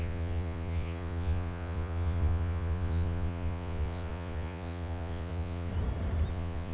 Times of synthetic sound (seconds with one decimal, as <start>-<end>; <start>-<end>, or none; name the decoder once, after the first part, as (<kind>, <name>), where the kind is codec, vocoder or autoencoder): 0.0-5.7 (vocoder, Vocos); 6.3-6.7